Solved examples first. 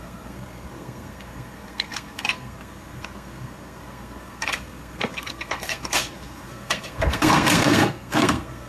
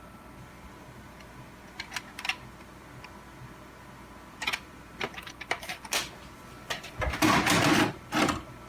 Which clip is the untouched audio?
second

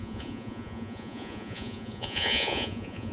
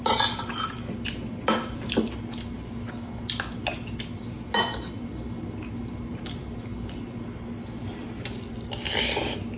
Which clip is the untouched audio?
second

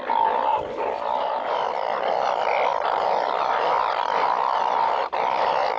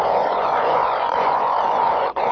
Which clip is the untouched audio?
first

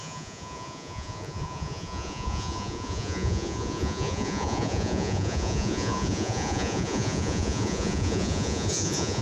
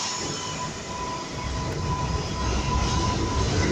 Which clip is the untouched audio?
second